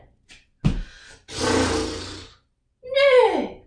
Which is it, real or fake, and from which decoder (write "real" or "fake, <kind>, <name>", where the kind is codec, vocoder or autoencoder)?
real